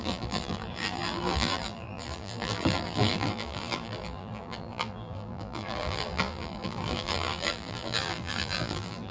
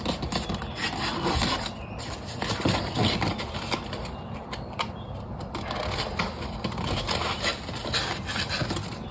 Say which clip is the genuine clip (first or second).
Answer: second